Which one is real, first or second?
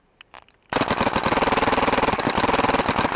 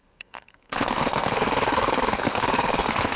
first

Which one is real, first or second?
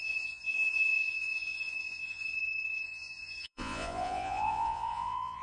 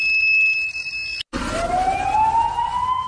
second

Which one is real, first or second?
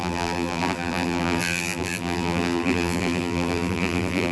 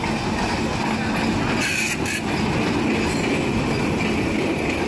second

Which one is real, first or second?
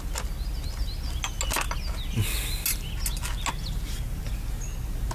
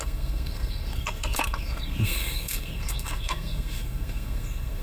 first